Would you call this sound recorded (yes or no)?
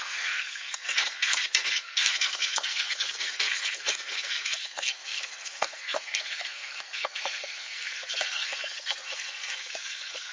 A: no